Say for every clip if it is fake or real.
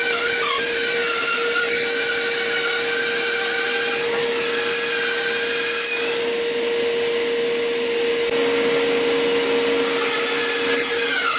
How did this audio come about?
real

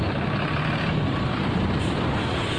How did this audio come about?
real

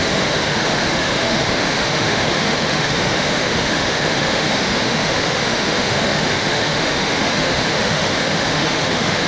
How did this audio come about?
fake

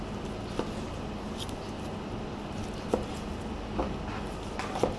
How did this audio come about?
real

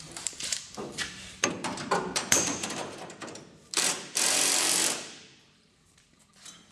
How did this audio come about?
fake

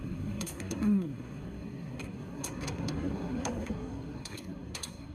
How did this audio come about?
fake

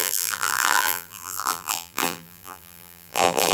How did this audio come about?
fake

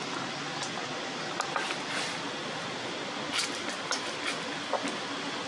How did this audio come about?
real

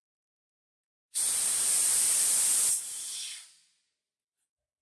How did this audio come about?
real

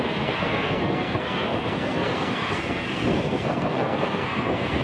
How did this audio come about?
fake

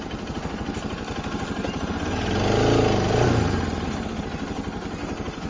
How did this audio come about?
real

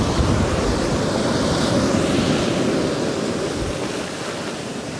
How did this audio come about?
real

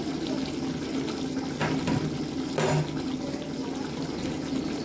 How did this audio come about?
real